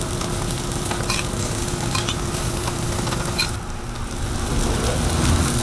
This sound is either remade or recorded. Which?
recorded